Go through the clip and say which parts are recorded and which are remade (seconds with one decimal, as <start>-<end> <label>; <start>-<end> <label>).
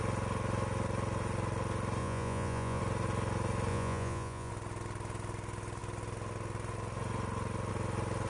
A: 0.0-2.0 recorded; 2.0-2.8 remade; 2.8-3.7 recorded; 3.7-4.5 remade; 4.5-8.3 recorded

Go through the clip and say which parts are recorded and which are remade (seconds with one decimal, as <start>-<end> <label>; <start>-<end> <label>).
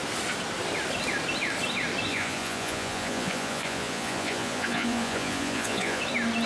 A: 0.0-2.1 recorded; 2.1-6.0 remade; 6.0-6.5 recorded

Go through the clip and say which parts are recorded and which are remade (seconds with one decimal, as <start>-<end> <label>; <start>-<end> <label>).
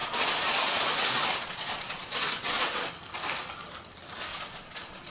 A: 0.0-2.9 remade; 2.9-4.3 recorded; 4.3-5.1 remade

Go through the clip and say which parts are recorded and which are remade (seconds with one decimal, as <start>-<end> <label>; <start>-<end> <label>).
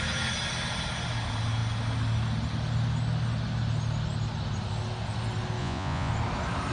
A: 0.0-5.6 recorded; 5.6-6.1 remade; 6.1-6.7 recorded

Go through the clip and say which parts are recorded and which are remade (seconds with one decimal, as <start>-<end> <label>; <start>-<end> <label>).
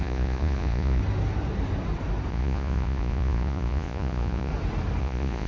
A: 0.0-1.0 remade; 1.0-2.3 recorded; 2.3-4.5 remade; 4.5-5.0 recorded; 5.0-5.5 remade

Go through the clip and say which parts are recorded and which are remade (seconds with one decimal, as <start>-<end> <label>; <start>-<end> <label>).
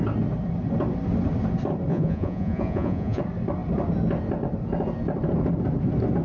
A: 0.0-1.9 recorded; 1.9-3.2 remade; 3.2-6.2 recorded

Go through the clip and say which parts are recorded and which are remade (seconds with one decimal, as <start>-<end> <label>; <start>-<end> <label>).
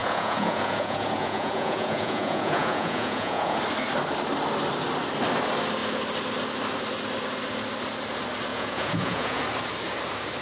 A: 0.0-3.6 remade; 3.6-8.5 recorded; 8.5-9.4 remade; 9.4-10.4 recorded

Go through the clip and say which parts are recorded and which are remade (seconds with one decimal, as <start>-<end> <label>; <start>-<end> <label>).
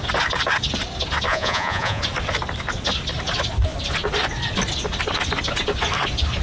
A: 0.0-1.3 recorded; 1.3-2.0 remade; 2.0-6.4 recorded